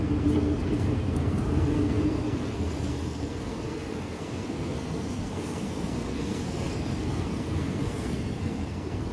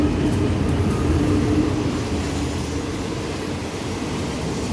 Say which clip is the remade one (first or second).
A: first